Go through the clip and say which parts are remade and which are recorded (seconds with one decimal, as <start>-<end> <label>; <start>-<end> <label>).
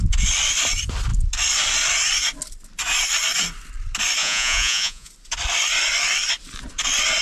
0.0-4.2 recorded; 4.2-5.1 remade; 5.1-7.2 recorded